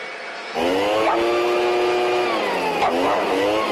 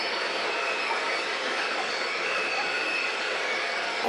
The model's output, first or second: second